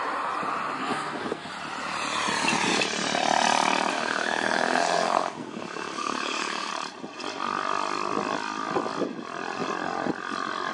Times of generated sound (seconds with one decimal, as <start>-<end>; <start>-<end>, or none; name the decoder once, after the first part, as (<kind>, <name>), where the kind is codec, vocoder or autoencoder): 0.8-1.5 (codec, SNAC); 3.9-6.7